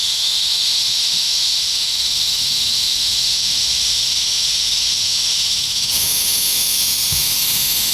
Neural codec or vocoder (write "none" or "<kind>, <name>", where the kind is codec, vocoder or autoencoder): autoencoder, DAC-VAE